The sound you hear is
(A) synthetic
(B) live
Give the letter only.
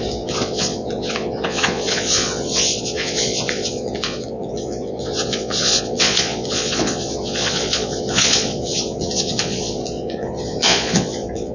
A